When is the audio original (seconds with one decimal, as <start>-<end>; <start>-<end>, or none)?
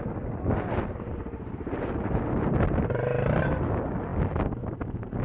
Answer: 0.0-5.2